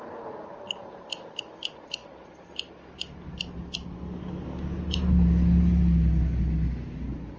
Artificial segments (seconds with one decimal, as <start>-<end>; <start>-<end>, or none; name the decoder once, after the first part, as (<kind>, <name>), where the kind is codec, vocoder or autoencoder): none